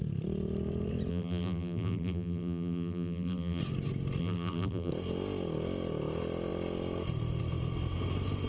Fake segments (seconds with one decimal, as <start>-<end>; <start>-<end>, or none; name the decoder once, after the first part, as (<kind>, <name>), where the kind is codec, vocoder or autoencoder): 1.1-3.6 (vocoder, BigVGAN v2); 4.2-4.9